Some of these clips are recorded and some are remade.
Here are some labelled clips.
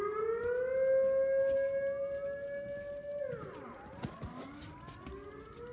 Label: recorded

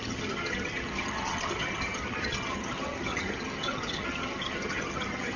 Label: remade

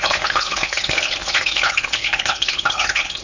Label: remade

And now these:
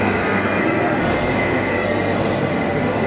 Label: remade